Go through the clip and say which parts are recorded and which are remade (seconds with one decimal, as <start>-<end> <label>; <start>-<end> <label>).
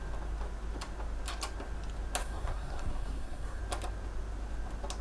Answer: 0.0-2.2 recorded; 2.2-3.6 remade; 3.6-5.0 recorded